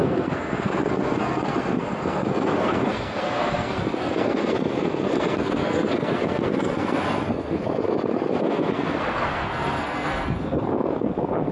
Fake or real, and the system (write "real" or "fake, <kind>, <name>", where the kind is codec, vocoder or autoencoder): fake, codec, SNAC